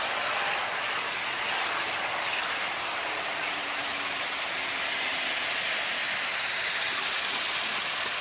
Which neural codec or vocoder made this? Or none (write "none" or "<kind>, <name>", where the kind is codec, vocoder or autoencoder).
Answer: none